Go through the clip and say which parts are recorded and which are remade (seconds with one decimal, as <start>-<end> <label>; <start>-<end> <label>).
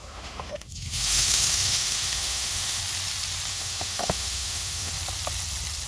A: 0.0-2.8 remade; 2.8-3.5 recorded; 3.5-4.9 remade; 4.9-5.9 recorded